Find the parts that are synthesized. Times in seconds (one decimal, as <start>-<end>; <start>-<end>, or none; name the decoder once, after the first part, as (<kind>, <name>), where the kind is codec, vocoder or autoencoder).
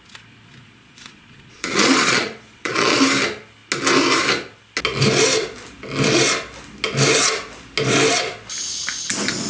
0.5-3.0 (vocoder, Vocos)